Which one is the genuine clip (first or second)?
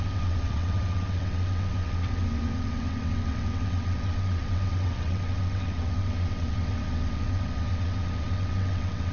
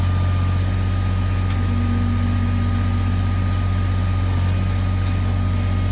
second